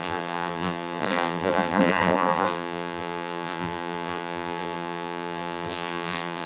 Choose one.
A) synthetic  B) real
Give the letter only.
A